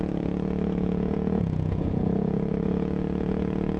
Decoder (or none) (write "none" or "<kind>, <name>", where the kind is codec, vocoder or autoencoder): vocoder, Vocos